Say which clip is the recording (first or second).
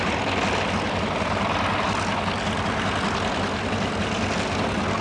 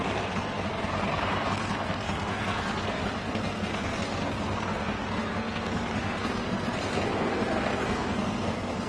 first